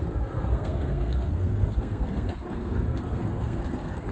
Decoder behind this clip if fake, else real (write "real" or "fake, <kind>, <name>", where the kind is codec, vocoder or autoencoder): fake, codec, SNAC